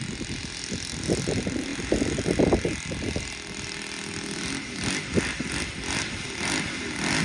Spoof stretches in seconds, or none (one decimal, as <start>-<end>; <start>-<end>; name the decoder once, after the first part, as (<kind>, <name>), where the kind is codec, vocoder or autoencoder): none